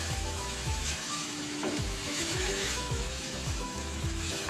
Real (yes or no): no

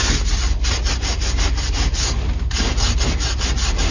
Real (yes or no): yes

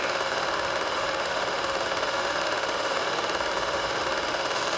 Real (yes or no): no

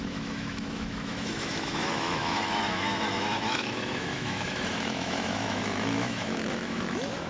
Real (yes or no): no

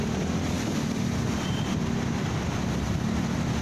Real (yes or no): yes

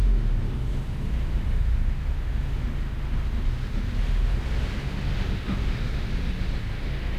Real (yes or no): no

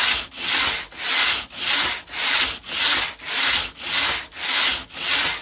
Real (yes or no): yes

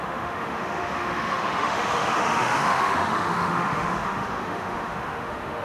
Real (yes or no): no